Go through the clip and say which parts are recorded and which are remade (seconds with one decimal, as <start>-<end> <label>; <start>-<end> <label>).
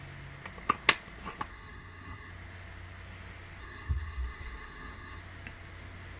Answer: 0.0-1.5 recorded; 1.5-2.3 remade; 2.3-3.6 recorded; 3.6-5.2 remade; 5.2-6.2 recorded